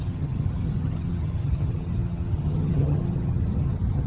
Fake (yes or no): yes